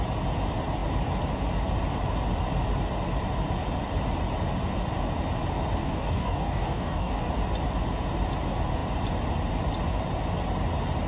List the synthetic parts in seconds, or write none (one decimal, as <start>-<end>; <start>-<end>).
5.8-7.3